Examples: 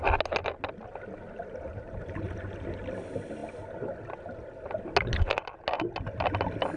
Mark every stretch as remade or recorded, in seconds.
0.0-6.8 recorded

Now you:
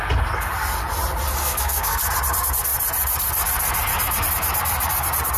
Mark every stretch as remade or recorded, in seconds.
0.0-1.4 recorded; 1.4-2.0 remade; 2.0-5.4 recorded

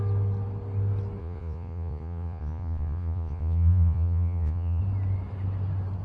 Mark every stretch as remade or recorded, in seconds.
0.0-1.2 recorded; 1.2-4.8 remade; 4.8-6.0 recorded

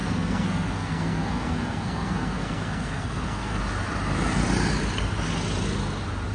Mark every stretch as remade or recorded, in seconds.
0.0-3.6 remade; 3.6-6.3 recorded

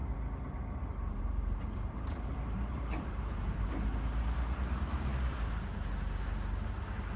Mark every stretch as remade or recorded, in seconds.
0.0-3.7 remade; 3.7-4.9 recorded; 4.9-5.5 remade; 5.5-7.2 recorded

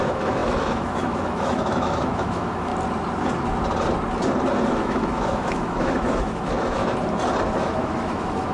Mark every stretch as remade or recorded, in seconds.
0.0-2.7 remade; 2.7-4.6 recorded; 4.6-6.8 remade; 6.8-7.5 recorded; 7.5-8.5 remade

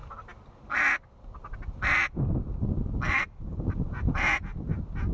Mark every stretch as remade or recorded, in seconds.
0.0-3.5 recorded; 3.5-4.2 remade; 4.2-5.1 recorded

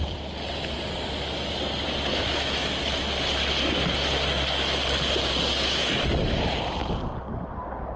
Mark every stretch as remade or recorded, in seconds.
0.0-2.1 recorded; 2.1-2.8 remade; 2.8-8.0 recorded